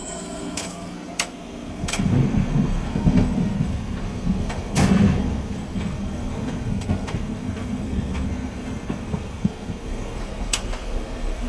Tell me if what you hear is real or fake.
fake